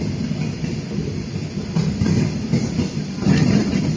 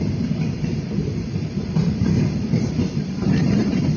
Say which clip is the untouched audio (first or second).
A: first